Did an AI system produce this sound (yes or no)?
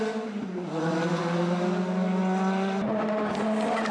no